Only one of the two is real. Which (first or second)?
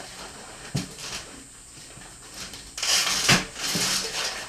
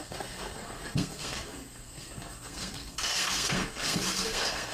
first